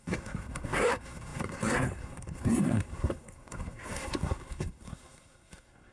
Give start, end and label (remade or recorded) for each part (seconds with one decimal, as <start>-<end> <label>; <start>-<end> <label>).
0.0-5.9 remade